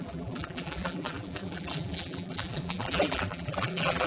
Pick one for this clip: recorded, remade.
remade